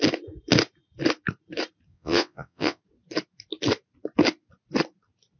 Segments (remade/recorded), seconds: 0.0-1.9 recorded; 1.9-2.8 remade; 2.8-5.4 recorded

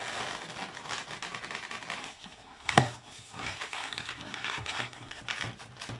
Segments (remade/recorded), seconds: 0.0-2.0 recorded; 2.0-5.2 remade; 5.2-6.0 recorded